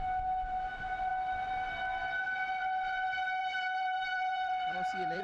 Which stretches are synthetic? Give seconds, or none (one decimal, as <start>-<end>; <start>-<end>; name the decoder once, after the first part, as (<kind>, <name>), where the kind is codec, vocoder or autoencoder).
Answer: 3.4-5.2 (vocoder, BigVGAN v2)